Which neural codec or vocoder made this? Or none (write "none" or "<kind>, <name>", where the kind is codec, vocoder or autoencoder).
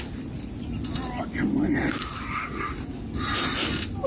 none